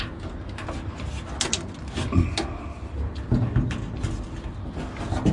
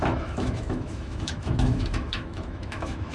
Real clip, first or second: first